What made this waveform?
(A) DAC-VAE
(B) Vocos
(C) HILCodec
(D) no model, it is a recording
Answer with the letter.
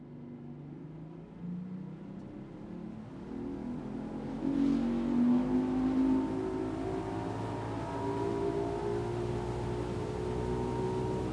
D